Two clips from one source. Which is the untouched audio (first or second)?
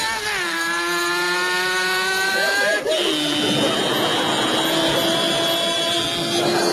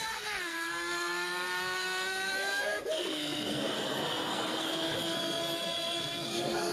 first